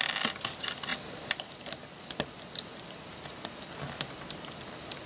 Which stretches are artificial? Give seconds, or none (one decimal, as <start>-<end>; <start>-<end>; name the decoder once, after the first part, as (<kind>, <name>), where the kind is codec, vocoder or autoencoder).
none

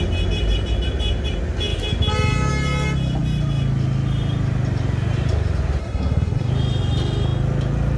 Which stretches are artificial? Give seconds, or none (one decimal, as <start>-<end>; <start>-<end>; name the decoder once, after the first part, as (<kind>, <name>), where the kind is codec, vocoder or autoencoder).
5.8-6.5 (codec, SNAC)

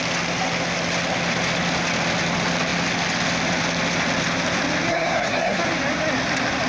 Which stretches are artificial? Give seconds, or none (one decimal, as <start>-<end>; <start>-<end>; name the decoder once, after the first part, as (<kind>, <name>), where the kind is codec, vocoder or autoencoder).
4.9-5.6 (codec, SNAC)

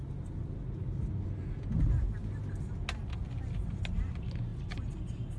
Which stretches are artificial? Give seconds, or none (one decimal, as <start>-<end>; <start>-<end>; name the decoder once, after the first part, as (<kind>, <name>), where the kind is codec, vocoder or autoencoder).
none

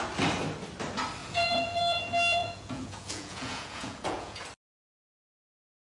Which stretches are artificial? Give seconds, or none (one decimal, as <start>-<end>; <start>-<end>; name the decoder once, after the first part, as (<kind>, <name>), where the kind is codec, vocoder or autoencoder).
1.2-1.8 (vocoder, Vocos); 2.4-4.4

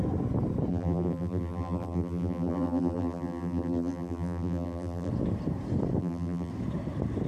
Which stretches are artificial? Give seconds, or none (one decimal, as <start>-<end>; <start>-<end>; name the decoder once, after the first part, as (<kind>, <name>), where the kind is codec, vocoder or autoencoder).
0.7-5.1 (vocoder, BigVGAN v2); 6.0-6.5

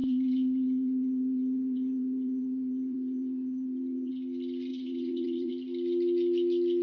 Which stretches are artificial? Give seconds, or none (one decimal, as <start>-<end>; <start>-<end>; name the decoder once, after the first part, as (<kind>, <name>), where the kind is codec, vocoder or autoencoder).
0.0-4.1 (vocoder, Vocos); 4.7-5.5